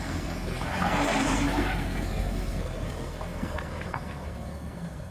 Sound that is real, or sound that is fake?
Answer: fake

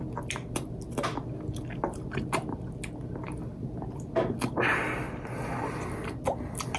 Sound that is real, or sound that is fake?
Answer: real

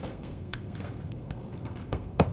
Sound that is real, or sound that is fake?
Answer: fake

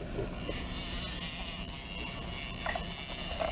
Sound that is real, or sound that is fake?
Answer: real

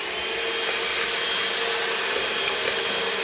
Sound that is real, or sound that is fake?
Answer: real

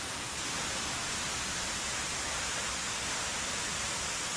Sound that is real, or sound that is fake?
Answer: real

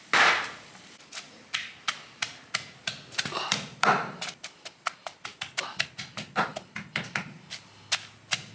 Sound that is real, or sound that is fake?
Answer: real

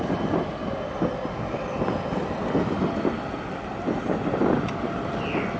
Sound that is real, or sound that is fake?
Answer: real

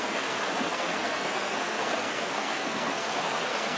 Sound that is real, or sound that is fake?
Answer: fake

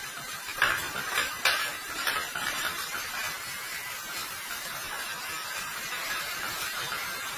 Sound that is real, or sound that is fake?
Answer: real